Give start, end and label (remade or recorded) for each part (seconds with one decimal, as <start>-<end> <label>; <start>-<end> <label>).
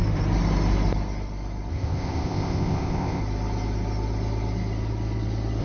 0.0-1.7 recorded; 1.7-3.2 remade; 3.2-5.6 recorded